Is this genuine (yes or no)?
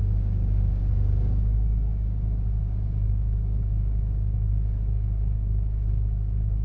no